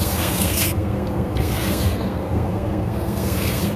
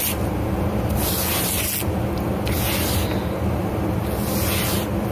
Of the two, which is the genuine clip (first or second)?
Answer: second